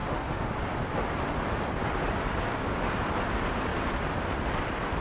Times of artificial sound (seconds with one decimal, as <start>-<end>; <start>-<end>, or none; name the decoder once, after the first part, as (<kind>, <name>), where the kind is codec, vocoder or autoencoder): none